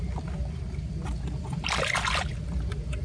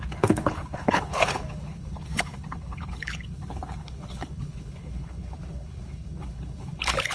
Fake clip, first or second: second